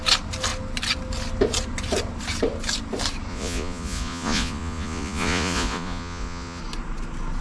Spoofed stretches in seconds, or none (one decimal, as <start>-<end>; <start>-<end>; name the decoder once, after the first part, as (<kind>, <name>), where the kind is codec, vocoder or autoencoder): 3.3-6.6 (vocoder, Vocos)